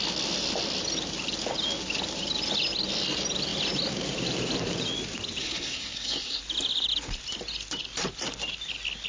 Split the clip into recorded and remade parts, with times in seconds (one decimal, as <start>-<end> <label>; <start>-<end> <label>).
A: 0.0-5.4 recorded; 5.4-6.4 remade; 6.4-9.1 recorded